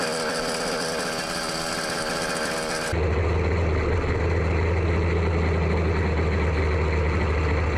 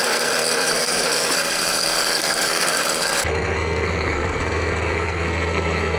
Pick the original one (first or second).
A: first